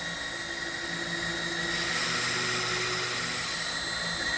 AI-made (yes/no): no